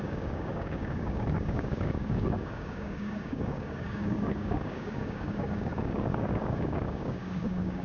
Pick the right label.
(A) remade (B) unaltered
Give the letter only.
A